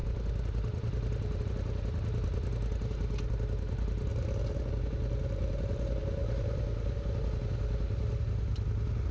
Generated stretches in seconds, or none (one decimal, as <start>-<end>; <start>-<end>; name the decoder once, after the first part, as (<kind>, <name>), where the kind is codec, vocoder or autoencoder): none